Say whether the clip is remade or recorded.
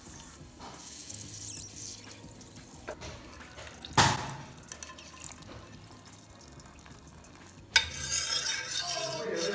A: recorded